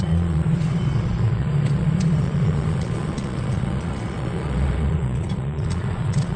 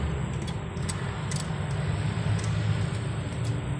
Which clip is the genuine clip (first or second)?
second